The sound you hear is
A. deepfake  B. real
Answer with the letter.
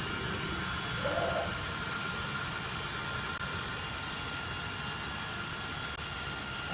B